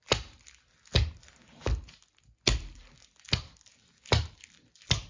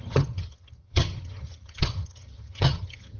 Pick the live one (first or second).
first